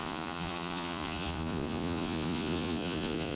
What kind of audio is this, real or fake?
fake